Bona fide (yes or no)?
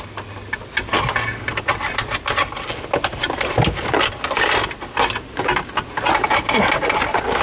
yes